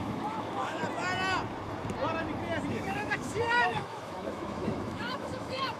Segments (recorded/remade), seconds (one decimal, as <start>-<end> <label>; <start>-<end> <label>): 0.0-0.8 remade; 0.8-2.7 recorded; 2.7-5.8 remade